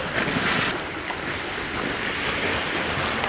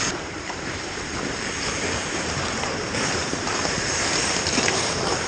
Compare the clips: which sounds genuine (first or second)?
first